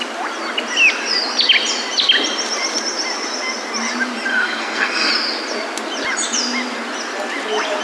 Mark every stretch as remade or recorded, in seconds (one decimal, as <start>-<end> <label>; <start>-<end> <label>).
0.0-4.3 recorded; 4.3-5.1 remade; 5.1-7.8 recorded